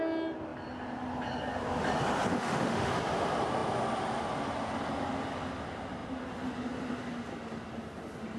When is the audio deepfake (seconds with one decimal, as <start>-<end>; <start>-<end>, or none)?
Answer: 2.3-2.9